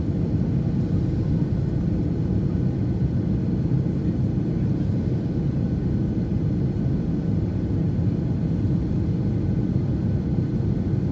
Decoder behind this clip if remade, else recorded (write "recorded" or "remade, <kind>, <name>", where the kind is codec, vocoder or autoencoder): recorded